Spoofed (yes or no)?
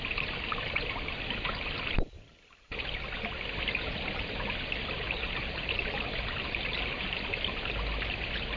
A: no